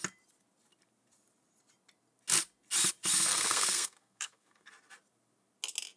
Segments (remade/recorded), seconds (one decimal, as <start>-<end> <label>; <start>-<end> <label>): 0.0-3.3 recorded; 3.3-4.7 remade; 4.7-6.0 recorded